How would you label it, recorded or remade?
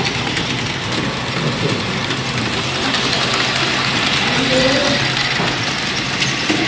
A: recorded